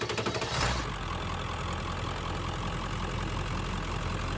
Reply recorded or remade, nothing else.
recorded